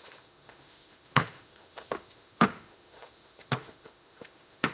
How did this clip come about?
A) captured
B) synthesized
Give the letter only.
B